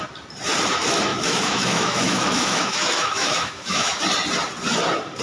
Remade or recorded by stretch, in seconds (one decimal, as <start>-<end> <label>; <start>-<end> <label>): 0.0-1.1 recorded; 1.1-4.0 remade; 4.0-5.2 recorded